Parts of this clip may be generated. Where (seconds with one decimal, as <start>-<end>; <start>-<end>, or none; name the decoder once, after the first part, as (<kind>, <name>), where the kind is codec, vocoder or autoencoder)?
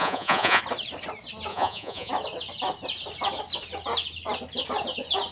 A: 0.0-0.6 (vocoder, Vocos); 1.5-2.1